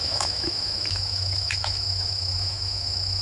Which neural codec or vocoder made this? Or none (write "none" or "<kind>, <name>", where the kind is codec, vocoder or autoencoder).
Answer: autoencoder, DAC-VAE